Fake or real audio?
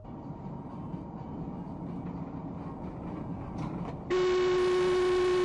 real